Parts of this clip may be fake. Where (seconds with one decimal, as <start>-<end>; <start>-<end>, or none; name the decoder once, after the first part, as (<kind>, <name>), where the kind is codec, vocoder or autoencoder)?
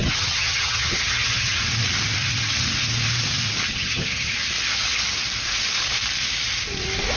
0.0-1.5 (vocoder, HiFi-GAN); 3.7-4.3